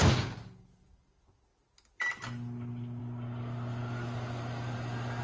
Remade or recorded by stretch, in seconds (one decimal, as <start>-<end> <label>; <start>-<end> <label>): 0.0-5.2 recorded